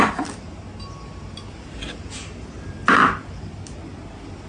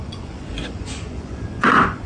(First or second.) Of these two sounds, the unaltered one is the first